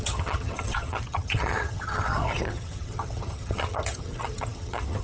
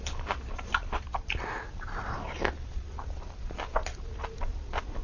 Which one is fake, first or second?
first